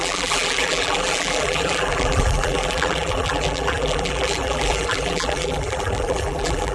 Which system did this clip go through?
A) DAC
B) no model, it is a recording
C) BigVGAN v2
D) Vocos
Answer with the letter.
C